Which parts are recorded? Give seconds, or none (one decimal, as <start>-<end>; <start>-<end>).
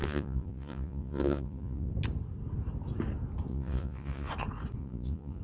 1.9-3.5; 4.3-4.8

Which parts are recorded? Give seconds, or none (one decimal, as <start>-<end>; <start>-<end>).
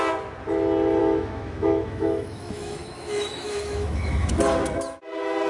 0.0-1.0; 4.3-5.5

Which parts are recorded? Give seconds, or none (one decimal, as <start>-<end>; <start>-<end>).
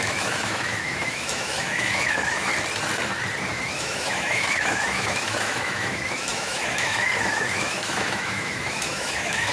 2.5-3.8